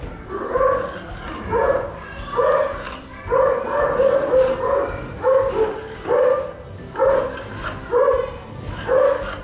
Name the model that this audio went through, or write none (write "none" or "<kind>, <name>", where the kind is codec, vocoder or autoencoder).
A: none